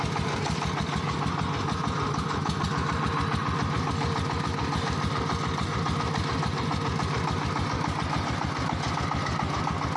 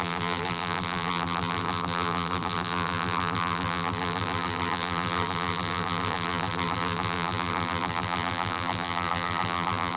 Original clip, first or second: first